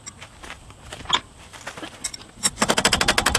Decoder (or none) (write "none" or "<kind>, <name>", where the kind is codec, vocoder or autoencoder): none